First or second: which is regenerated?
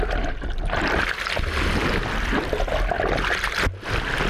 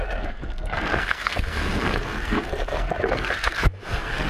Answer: second